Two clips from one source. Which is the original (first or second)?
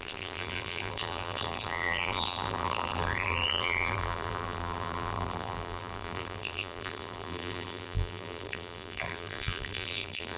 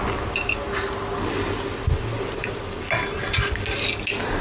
second